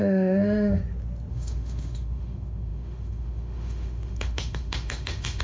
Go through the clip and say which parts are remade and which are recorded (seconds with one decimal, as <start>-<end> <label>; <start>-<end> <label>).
0.0-0.8 remade; 0.8-1.3 recorded; 1.3-5.4 remade